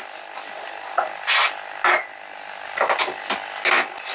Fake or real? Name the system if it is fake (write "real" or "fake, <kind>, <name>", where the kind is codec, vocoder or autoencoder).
real